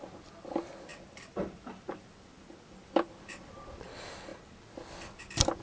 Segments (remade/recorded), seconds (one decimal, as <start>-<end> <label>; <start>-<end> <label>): 0.0-0.9 recorded; 0.9-3.5 remade; 3.5-5.6 recorded